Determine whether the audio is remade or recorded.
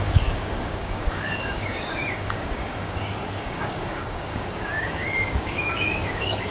remade